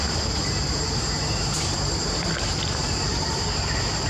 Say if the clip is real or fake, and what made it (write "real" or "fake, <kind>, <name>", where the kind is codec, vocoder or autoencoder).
fake, vocoder, BigVGAN v2